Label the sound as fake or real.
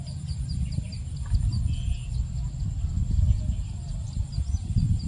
real